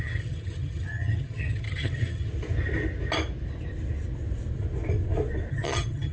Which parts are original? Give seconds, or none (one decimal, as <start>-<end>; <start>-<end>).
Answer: 2.3-5.5